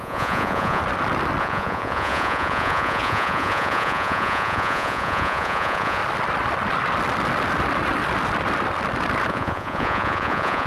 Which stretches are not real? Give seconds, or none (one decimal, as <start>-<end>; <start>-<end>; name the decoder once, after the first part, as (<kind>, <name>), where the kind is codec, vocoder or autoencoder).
0.0-0.8 (vocoder, Vocos); 1.4-6.0; 9.3-10.7